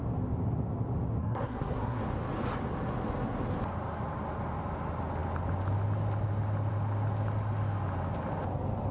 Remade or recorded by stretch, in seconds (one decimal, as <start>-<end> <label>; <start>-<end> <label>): 0.0-1.2 recorded; 1.2-2.0 remade; 2.0-8.9 recorded